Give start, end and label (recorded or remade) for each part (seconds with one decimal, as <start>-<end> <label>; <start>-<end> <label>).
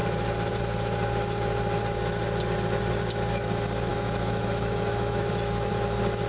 0.0-3.9 recorded; 3.9-5.7 remade; 5.7-6.3 recorded